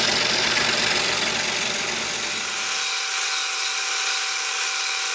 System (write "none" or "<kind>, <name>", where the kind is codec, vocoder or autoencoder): none